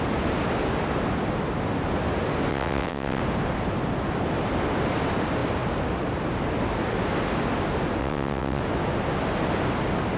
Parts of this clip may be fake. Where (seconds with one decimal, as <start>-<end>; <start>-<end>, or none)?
2.5-3.2; 8.0-8.6